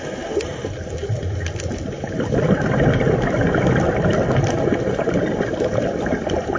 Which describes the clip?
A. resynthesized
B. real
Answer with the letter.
A